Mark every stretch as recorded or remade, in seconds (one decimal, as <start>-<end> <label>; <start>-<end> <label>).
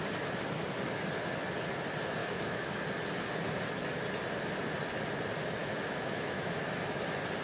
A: 0.0-2.2 recorded; 2.2-2.7 remade; 2.7-5.6 recorded; 5.6-6.7 remade; 6.7-7.4 recorded